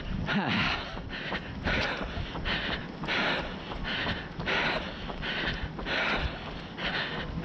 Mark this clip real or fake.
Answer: real